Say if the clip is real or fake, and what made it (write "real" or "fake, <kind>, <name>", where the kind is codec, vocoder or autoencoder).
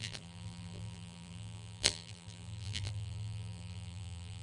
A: fake, vocoder, BigVGAN v2